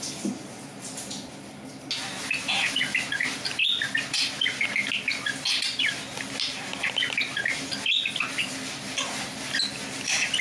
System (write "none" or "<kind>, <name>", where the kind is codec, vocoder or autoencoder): none